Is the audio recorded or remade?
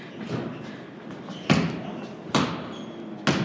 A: recorded